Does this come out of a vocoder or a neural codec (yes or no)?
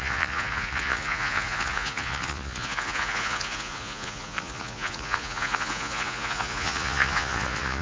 yes